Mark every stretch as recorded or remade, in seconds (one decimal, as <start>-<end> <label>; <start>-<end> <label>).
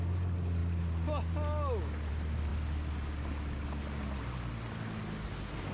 0.0-5.7 recorded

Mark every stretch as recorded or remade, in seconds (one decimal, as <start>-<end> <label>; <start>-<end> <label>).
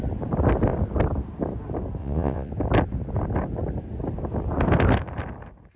0.0-2.0 recorded; 2.0-2.5 remade; 2.5-5.8 recorded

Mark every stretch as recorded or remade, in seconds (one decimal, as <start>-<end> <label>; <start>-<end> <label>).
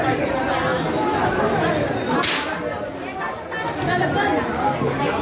0.0-5.2 recorded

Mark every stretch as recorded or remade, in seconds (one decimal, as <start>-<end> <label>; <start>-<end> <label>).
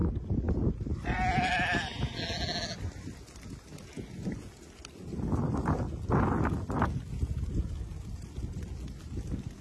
0.0-9.6 recorded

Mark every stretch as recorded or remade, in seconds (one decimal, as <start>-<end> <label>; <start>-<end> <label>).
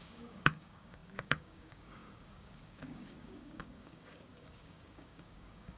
0.0-5.8 remade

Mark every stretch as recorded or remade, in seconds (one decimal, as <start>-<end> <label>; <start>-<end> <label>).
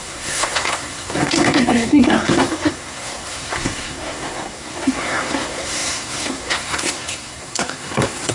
0.0-8.3 remade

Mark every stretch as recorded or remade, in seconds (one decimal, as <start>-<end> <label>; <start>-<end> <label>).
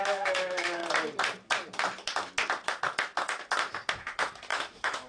0.0-0.8 remade; 0.8-3.9 recorded; 3.9-5.1 remade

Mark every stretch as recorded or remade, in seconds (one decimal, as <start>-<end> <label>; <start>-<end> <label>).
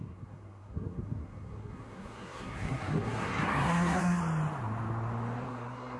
0.0-4.2 remade; 4.2-5.5 recorded; 5.5-6.0 remade